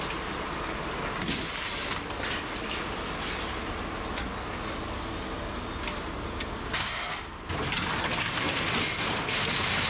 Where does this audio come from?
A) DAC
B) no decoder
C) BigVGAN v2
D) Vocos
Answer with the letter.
B